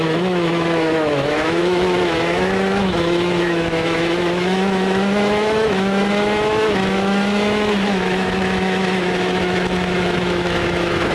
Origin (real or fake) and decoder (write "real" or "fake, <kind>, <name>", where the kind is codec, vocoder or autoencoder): fake, autoencoder, DAC-VAE